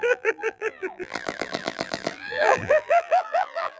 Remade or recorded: remade